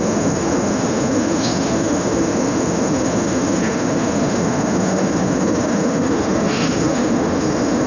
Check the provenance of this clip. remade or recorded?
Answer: remade